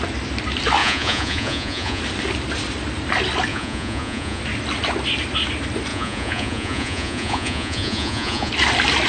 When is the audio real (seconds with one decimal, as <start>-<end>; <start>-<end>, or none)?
0.0-0.8; 2.0-3.5; 4.4-5.9; 8.5-9.1

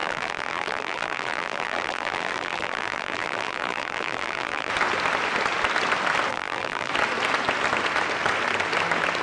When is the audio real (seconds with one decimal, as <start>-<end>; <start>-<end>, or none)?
4.7-6.3; 6.9-9.2

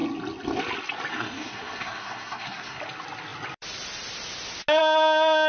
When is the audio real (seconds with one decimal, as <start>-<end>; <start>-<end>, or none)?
0.0-1.1; 2.8-5.5

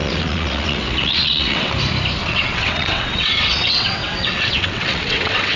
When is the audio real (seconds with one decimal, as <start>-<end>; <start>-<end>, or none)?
1.7-2.2

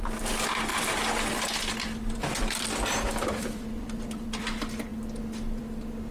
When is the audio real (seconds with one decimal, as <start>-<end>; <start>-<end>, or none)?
0.0-0.7; 4.4-6.1